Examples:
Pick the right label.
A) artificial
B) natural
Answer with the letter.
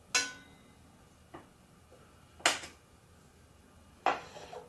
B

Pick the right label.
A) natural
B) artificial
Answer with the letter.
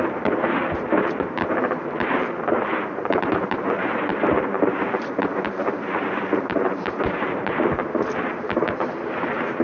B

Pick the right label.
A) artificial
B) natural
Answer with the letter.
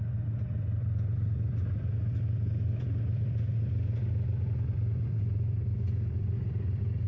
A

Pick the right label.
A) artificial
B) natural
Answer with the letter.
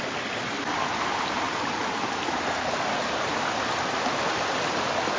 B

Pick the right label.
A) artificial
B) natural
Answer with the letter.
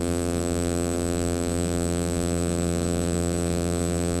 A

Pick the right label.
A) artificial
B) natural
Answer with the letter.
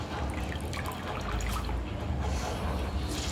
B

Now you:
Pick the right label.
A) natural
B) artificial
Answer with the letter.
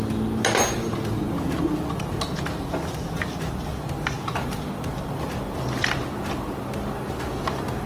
A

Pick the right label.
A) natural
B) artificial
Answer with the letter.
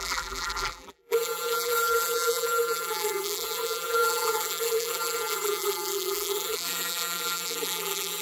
B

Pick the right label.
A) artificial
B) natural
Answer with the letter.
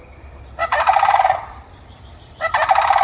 A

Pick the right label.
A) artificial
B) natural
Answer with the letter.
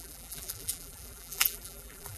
A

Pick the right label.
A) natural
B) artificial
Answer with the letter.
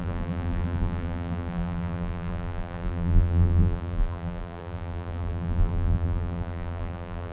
B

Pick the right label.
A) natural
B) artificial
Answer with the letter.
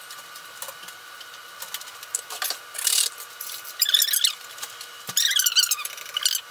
B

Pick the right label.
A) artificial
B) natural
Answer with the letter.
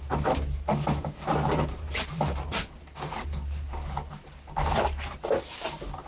A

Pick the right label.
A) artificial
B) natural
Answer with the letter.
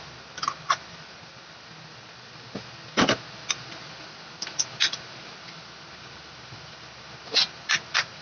B